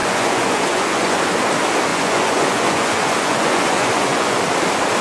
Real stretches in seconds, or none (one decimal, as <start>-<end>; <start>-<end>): 1.2-1.9; 4.4-5.0